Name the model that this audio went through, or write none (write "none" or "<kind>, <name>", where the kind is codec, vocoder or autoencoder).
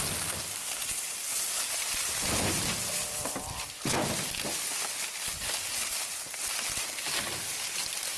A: none